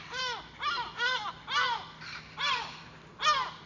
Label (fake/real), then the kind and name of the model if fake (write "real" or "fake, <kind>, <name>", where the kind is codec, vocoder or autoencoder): real